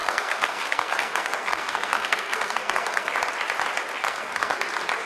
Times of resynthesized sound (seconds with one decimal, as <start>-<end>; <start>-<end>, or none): 0.0-3.1; 4.0-4.6